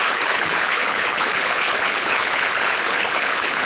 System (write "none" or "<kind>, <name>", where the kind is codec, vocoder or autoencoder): codec, HILCodec